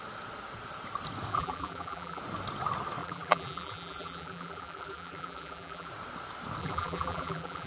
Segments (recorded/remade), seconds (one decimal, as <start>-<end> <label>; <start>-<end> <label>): 0.0-1.3 recorded; 1.3-2.2 remade; 2.2-3.0 recorded; 3.0-5.9 remade; 5.9-6.6 recorded; 6.6-7.7 remade